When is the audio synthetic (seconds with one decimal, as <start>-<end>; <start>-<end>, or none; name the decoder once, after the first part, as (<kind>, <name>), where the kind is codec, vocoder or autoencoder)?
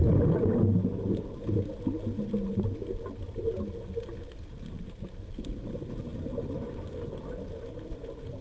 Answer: none